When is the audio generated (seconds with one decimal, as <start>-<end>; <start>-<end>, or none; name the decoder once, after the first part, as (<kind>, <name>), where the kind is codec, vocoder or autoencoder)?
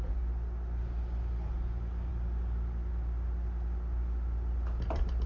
none